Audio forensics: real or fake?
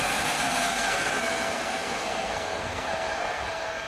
fake